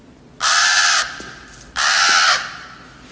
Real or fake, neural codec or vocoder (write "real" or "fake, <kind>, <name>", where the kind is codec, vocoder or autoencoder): real